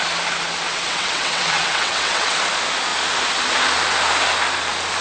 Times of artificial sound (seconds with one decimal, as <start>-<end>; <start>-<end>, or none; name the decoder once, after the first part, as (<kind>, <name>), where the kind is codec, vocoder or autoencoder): 0.7-2.4 (vocoder, WaveNeXt)